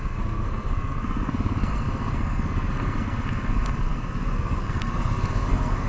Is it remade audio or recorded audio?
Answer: remade